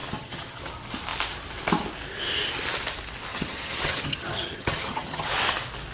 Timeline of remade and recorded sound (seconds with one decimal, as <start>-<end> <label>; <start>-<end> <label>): 0.0-0.6 remade; 0.6-3.3 recorded; 3.3-5.3 remade; 5.3-5.9 recorded